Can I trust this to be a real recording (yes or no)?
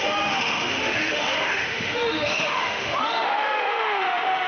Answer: no